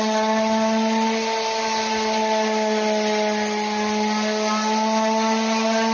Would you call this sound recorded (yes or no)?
yes